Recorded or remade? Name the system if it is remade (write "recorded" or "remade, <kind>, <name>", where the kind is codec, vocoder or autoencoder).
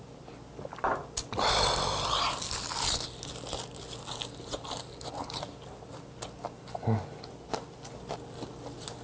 recorded